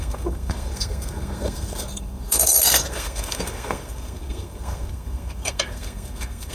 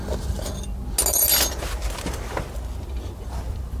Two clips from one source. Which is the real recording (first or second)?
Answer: second